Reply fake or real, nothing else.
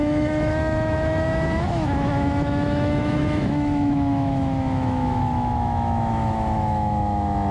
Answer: fake